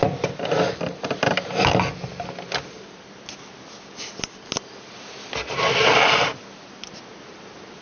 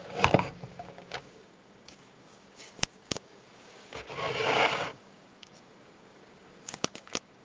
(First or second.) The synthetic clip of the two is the second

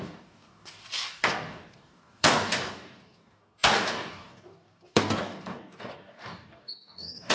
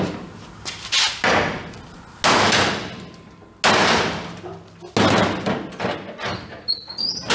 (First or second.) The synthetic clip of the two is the first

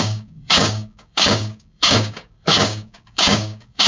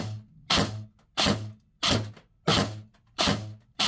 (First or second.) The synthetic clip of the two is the first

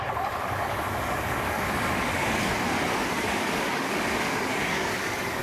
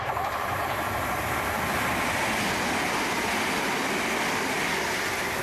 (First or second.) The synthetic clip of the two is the first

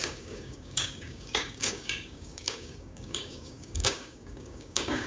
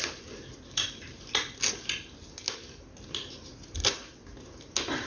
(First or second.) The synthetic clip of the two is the first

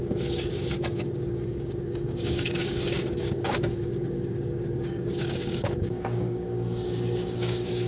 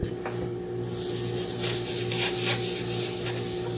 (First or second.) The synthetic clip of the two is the first